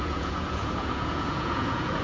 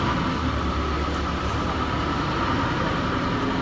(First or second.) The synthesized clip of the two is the first